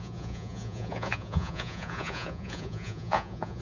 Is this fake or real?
fake